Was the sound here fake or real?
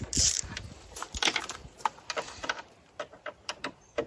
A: fake